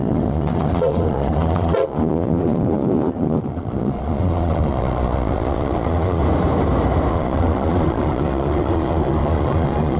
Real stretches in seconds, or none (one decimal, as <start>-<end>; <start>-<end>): 6.2-7.1

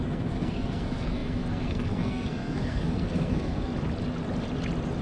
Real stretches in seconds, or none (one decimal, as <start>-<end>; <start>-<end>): 3.7-5.0

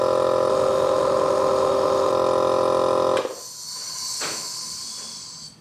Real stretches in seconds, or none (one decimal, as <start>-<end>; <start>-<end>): 0.0-0.5; 2.1-5.6

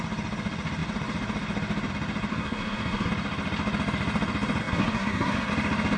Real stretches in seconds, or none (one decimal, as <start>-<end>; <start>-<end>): 0.0-2.3; 3.1-4.6; 5.5-6.0

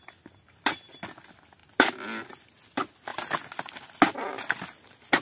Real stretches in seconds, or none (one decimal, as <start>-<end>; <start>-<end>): 0.0-5.2

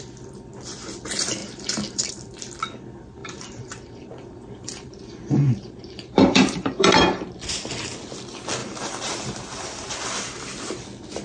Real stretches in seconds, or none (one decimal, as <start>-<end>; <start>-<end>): 0.0-1.4; 2.1-3.2; 7.3-8.6; 9.9-11.2